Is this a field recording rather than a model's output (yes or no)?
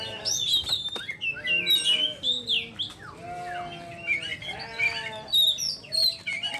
yes